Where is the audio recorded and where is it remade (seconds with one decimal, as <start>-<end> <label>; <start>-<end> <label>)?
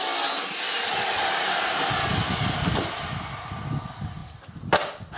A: 0.0-5.2 recorded